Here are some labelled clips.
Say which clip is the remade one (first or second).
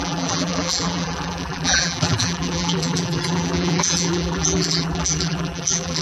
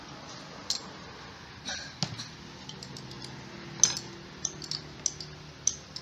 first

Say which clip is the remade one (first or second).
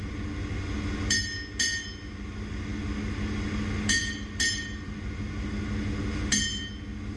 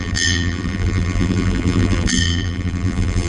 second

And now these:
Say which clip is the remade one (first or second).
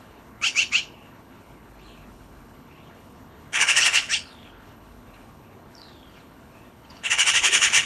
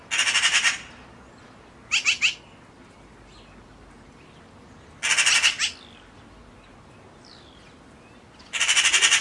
first